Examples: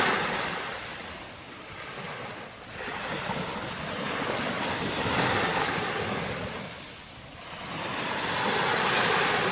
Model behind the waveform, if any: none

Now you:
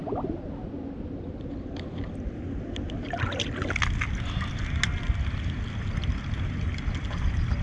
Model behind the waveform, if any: none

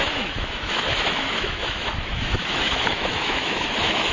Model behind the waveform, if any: autoencoder, DAC-VAE